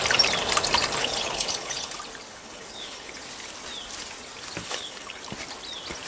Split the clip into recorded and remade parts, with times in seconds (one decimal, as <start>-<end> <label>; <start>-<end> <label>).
0.0-1.0 recorded; 1.0-1.9 remade; 1.9-2.3 recorded; 2.3-3.1 remade; 3.1-4.6 recorded; 4.6-5.2 remade; 5.2-6.1 recorded